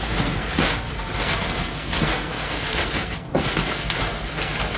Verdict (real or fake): fake